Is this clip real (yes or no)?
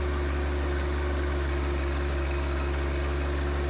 yes